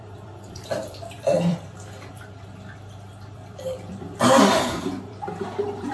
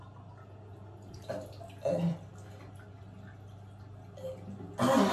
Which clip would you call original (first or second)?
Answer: second